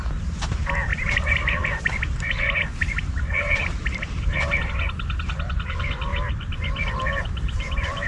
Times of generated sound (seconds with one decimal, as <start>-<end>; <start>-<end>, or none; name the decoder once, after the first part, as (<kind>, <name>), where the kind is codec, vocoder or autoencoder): 0.9-4.7 (vocoder, BigVGAN v2); 6.1-8.1